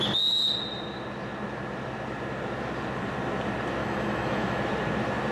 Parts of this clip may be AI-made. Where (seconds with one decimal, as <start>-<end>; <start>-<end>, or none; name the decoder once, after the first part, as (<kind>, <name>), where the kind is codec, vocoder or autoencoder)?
3.8-4.6 (autoencoder, DAC-VAE)